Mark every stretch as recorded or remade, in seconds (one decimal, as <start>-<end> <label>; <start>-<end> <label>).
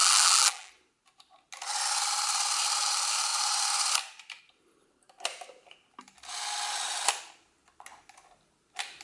0.0-0.7 remade; 0.7-9.0 recorded